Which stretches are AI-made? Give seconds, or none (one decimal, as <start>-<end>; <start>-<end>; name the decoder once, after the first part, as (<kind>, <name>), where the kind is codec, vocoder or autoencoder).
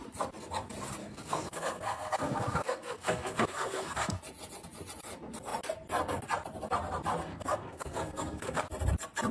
1.0-4.2 (codec, SNAC); 7.3-8.6